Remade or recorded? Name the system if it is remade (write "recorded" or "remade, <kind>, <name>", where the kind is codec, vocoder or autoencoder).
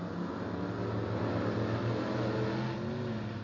recorded